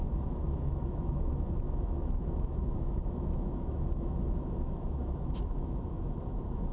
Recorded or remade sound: remade